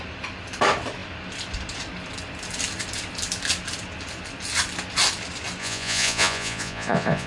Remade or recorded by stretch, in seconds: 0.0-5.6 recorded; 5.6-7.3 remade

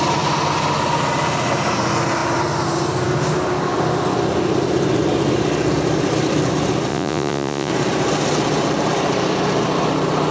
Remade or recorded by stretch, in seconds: 0.0-6.9 recorded; 6.9-7.7 remade; 7.7-10.3 recorded

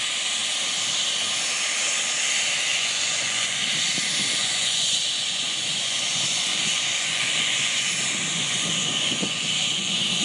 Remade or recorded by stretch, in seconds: 0.0-2.7 recorded; 2.7-3.6 remade; 3.6-4.4 recorded; 4.4-7.9 remade; 7.9-8.3 recorded; 8.3-10.2 remade

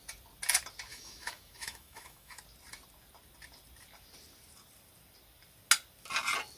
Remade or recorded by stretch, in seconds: 0.0-0.9 recorded; 0.9-2.4 remade; 2.4-6.6 recorded

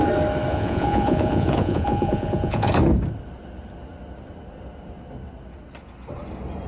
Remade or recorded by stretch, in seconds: 0.0-0.5 recorded; 0.5-2.7 remade; 2.7-6.7 recorded